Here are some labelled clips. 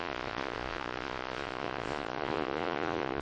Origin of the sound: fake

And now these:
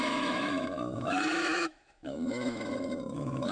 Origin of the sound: fake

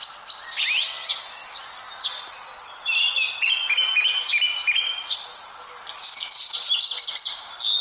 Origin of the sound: real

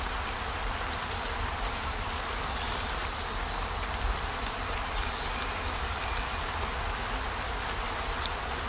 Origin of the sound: real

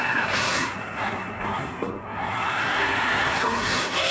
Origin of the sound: fake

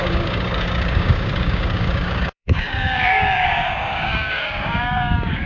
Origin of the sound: fake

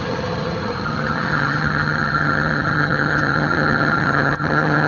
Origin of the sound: fake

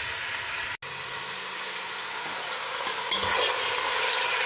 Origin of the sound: real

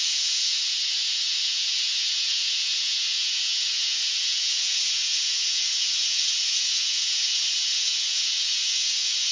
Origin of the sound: fake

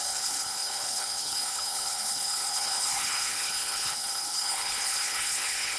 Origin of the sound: fake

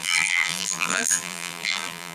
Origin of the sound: fake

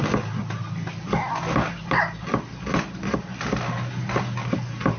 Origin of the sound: real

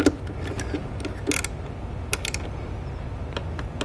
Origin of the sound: real